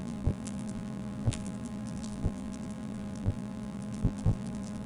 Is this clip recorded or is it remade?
remade